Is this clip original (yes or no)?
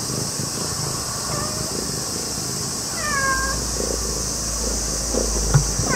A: yes